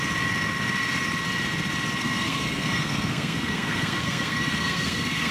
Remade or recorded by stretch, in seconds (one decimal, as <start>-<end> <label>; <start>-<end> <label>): 0.0-2.0 recorded; 2.0-5.3 remade